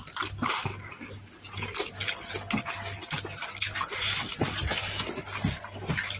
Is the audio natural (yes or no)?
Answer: yes